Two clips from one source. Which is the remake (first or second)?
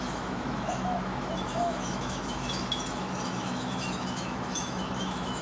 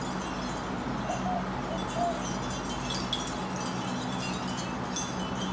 first